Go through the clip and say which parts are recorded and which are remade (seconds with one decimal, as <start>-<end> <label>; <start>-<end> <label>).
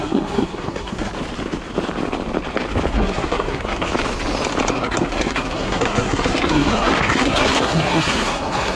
0.0-1.1 remade; 1.1-2.9 recorded; 2.9-3.9 remade; 3.9-4.7 recorded; 4.7-8.8 remade